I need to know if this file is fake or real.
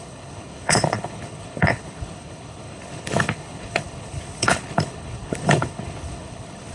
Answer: fake